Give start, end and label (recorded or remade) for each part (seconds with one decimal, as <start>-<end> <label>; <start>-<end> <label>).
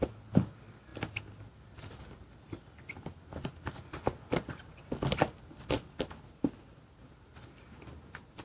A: 0.0-8.4 recorded